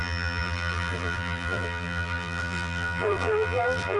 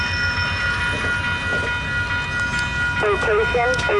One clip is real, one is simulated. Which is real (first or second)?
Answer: second